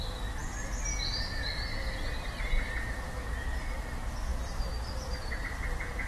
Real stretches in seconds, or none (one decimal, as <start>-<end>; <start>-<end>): 0.0-6.1